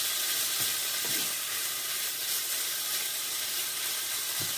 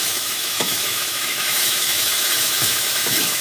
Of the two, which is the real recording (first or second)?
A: first